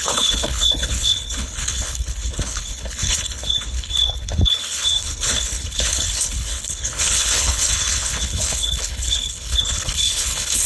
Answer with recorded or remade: remade